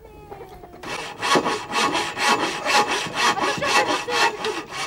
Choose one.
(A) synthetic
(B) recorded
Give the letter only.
B